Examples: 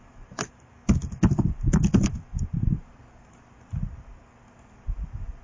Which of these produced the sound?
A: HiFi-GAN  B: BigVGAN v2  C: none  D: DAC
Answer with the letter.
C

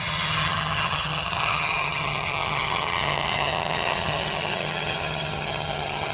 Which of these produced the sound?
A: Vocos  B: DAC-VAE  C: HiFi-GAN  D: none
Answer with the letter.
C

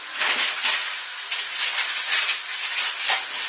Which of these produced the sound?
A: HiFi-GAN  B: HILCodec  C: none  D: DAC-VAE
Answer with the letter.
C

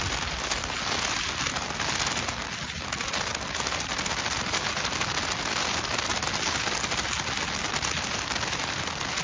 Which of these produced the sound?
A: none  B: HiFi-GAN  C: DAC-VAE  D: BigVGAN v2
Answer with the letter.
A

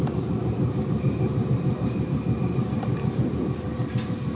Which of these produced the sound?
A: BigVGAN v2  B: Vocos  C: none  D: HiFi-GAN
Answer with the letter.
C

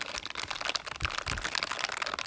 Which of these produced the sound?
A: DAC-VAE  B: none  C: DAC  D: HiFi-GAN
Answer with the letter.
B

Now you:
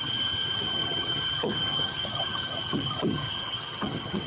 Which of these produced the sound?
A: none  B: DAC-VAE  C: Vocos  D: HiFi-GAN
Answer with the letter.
D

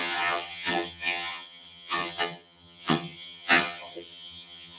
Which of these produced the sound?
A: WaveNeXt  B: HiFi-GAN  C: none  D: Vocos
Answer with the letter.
B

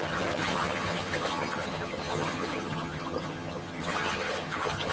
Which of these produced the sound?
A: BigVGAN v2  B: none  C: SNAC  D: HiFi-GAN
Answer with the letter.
D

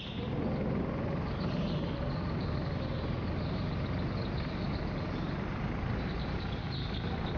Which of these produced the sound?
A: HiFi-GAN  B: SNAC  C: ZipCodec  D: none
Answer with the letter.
D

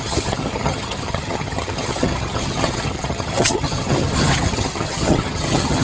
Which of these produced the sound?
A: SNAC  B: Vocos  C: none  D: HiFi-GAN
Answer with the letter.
D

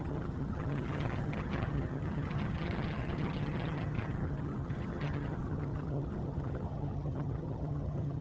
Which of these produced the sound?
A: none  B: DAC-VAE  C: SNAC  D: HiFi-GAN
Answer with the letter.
D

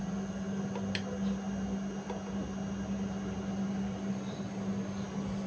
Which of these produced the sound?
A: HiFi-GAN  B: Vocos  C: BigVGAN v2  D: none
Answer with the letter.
D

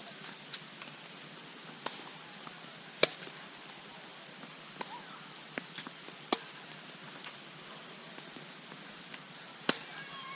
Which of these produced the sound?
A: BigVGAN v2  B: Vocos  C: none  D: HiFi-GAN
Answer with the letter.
C